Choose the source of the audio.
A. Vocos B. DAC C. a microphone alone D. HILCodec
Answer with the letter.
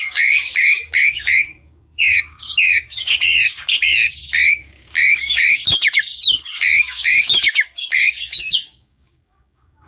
B